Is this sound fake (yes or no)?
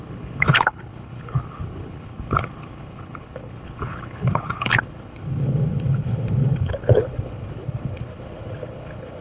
yes